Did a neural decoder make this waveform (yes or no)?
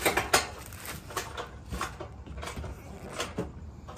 no